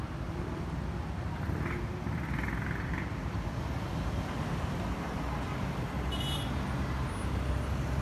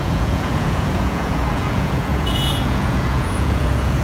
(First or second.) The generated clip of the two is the second